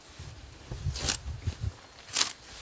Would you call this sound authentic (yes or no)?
yes